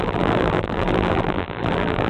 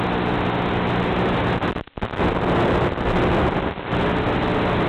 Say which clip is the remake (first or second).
first